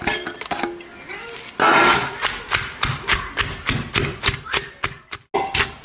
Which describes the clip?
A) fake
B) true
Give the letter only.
B